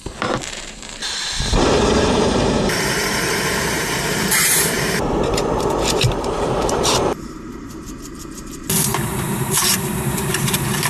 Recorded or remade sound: remade